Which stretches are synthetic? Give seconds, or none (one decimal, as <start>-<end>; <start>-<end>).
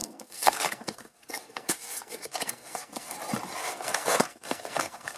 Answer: 0.0-3.1; 3.6-5.2